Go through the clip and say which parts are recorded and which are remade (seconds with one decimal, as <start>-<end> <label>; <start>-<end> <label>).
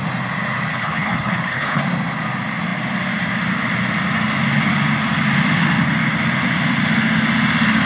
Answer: 0.0-0.7 recorded; 0.7-1.8 remade; 1.8-7.9 recorded